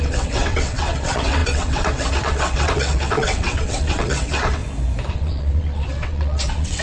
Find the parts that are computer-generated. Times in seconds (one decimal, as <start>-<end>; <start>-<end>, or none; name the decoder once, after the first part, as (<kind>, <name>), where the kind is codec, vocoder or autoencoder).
0.0-4.6 (vocoder, WaveNeXt); 5.1-6.8